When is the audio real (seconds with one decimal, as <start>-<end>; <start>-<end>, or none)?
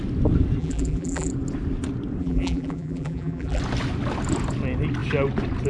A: 0.0-0.6; 1.3-2.2; 3.6-5.7